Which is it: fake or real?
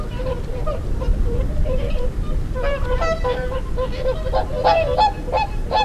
fake